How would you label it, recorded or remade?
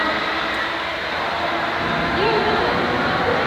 recorded